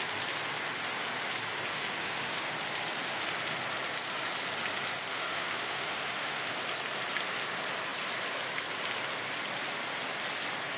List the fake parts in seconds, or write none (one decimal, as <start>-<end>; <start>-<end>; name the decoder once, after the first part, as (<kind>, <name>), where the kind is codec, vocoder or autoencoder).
1.7-2.5 (autoencoder, DAC-VAE); 5.1-6.5